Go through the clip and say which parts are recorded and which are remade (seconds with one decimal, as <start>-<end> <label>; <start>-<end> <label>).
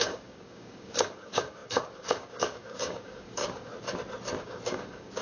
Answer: 0.0-3.7 remade; 3.7-4.4 recorded; 4.4-5.2 remade